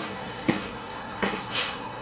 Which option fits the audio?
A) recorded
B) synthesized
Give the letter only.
B